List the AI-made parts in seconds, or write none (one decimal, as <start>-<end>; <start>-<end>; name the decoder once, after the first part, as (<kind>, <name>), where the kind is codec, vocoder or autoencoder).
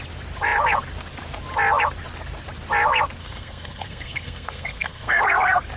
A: 3.2-5.2 (codec, SNAC)